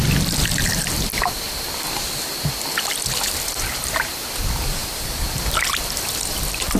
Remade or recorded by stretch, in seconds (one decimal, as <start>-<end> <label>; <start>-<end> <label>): 0.0-1.1 remade; 1.1-2.8 recorded; 2.8-4.8 remade; 4.8-5.7 recorded; 5.7-6.8 remade